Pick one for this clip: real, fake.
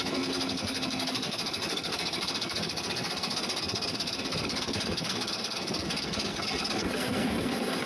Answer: fake